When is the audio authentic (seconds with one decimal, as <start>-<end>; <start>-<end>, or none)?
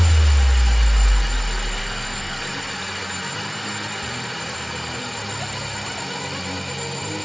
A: 0.0-1.8; 2.4-7.2